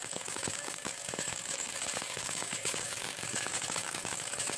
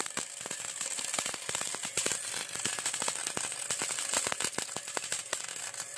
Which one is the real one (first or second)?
second